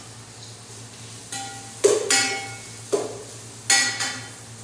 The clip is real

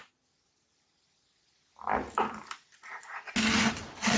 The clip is real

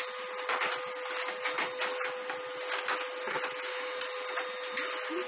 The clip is real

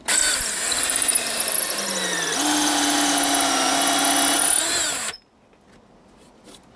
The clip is real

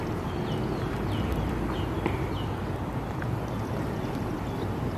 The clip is real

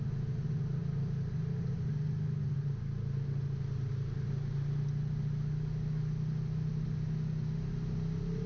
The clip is real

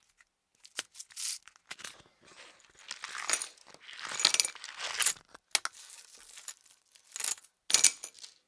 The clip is real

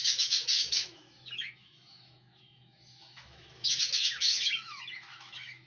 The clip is fake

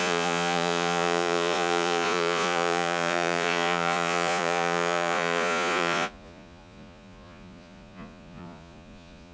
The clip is fake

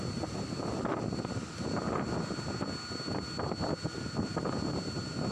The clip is real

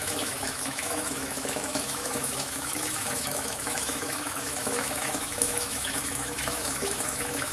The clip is fake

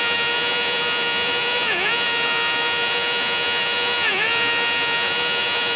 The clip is fake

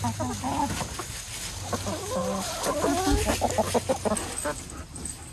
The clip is real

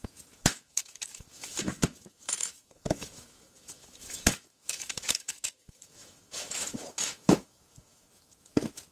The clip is fake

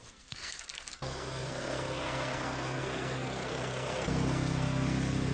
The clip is fake